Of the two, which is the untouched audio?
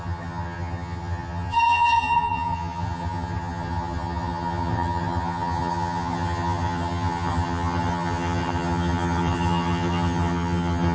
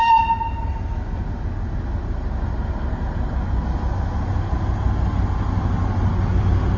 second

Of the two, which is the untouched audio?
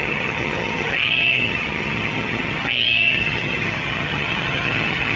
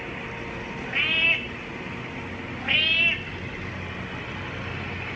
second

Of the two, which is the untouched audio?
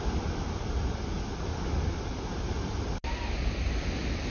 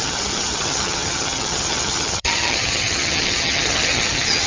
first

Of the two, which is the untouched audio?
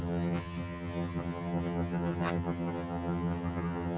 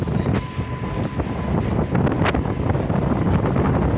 second